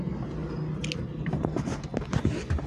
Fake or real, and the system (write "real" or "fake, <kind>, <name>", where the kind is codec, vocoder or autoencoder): real